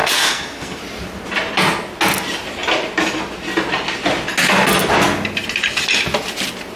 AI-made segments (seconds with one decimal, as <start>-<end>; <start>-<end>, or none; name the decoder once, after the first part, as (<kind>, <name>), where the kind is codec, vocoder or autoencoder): 0.0-0.8 (codec, SNAC)